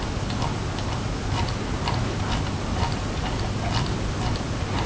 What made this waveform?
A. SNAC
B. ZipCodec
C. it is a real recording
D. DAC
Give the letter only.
C